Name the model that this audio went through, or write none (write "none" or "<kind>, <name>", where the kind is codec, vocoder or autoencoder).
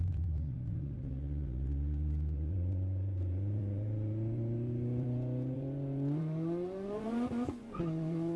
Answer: vocoder, Vocos